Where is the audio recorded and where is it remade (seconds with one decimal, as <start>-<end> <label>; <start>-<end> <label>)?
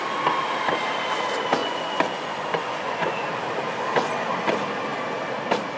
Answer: 0.0-1.6 recorded; 1.6-3.3 remade; 3.3-5.8 recorded